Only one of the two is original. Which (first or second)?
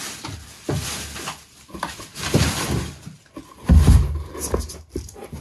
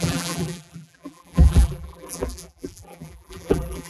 first